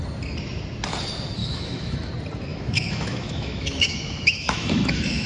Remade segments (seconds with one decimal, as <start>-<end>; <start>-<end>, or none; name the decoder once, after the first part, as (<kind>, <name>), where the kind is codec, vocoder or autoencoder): 1.4-2.1 (autoencoder, DAC-VAE); 2.5-5.3